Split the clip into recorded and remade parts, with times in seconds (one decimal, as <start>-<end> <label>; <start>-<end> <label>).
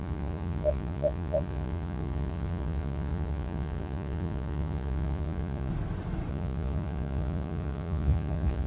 0.0-5.7 remade; 5.7-6.3 recorded; 6.3-8.7 remade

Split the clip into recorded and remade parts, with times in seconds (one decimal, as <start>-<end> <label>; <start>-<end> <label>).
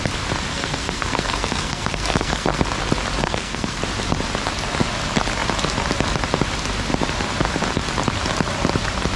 0.0-0.5 recorded; 0.5-2.6 remade; 2.6-3.2 recorded; 3.2-3.8 remade; 3.8-9.2 recorded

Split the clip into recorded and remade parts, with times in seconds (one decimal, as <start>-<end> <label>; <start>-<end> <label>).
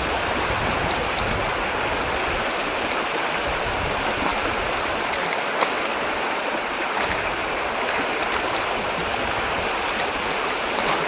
0.0-2.6 recorded; 2.6-3.3 remade; 3.3-11.1 recorded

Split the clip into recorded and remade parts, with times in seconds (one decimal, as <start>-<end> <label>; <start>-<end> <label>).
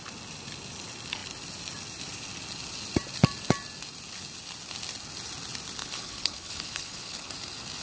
0.0-5.8 recorded; 5.8-7.3 remade; 7.3-7.8 recorded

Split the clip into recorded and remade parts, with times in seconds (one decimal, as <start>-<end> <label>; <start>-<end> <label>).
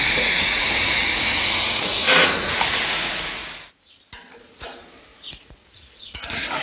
0.0-3.4 remade; 3.4-4.3 recorded; 4.3-6.6 remade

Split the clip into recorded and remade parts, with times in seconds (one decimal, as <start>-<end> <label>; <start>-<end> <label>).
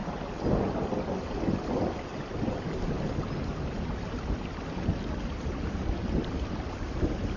0.0-7.4 recorded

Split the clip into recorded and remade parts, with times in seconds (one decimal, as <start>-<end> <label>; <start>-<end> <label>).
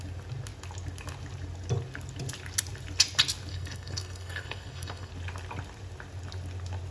0.0-3.5 recorded; 3.5-5.1 remade; 5.1-6.9 recorded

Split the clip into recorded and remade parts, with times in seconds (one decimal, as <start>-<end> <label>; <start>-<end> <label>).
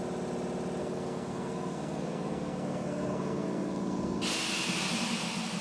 0.0-0.8 recorded; 0.8-4.2 remade; 4.2-5.6 recorded